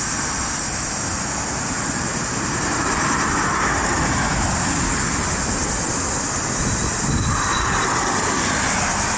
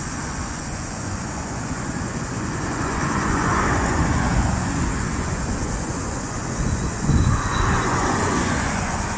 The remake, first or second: second